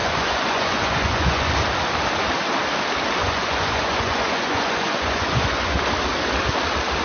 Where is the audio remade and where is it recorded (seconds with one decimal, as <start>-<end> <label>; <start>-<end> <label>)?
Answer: 0.0-1.5 remade; 1.5-3.2 recorded; 3.2-5.8 remade; 5.8-7.0 recorded